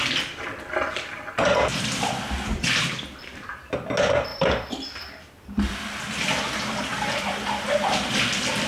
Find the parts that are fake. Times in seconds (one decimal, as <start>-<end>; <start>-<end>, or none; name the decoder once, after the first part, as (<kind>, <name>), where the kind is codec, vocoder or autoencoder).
1.7-3.5 (vocoder, BigVGAN v2); 4.3-8.7